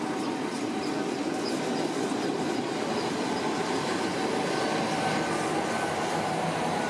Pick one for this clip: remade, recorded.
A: recorded